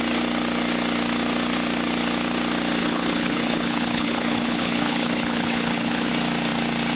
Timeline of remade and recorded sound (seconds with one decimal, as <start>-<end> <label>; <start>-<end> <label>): 0.0-2.8 recorded; 2.8-6.1 remade; 6.1-7.0 recorded